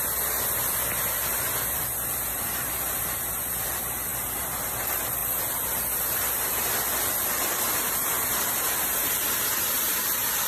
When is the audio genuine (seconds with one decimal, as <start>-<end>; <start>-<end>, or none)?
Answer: 0.0-10.5